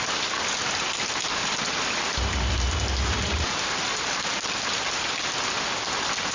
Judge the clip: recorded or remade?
recorded